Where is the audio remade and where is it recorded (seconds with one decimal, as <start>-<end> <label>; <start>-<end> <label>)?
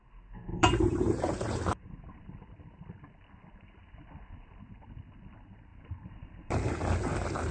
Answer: 0.0-0.5 recorded; 0.5-2.2 remade; 2.2-5.7 recorded; 5.7-6.7 remade; 6.7-7.5 recorded